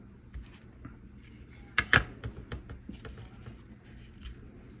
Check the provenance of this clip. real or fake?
real